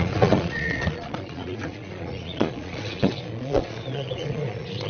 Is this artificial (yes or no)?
yes